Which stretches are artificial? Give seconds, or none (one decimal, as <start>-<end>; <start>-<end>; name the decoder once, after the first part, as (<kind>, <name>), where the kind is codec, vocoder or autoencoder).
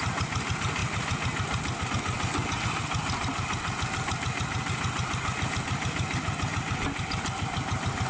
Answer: none